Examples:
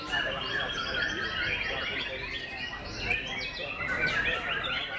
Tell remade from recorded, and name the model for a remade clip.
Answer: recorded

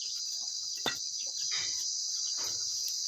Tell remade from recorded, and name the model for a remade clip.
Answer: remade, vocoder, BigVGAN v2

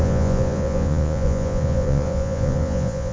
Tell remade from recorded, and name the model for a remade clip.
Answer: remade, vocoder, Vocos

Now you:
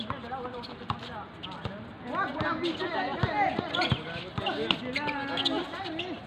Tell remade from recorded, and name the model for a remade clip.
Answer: recorded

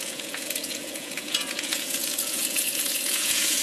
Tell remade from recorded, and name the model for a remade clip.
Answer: remade, vocoder, Vocos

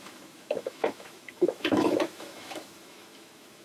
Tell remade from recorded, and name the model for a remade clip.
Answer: remade, autoencoder, DAC-VAE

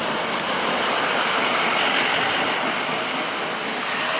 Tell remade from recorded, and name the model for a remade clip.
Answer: recorded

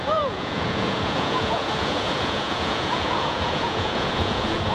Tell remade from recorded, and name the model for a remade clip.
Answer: remade, vocoder, Vocos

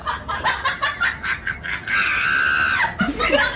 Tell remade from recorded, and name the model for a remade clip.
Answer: recorded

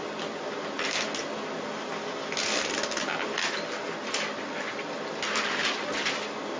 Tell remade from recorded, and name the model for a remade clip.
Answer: recorded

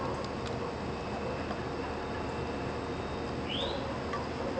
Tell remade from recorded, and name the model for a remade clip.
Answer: recorded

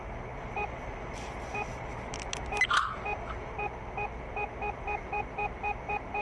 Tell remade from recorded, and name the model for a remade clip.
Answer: recorded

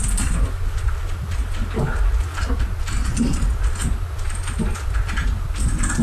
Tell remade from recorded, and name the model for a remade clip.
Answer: recorded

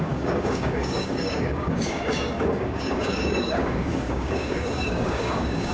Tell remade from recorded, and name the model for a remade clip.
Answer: remade, codec, DAC